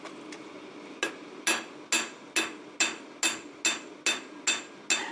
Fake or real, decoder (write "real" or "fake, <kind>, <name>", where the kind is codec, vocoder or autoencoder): real